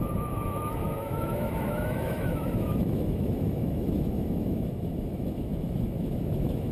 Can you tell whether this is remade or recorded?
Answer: remade